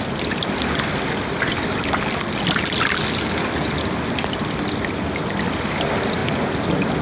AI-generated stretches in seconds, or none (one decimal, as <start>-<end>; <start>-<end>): none